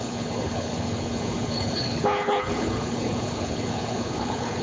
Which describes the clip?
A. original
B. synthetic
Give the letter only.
B